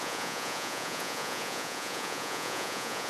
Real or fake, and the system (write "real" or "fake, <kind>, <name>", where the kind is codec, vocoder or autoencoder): fake, vocoder, Vocos